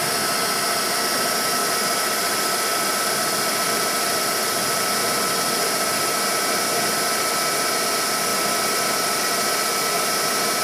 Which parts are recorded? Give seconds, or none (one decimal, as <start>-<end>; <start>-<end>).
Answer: 0.0-1.6; 3.1-8.3; 9.0-10.6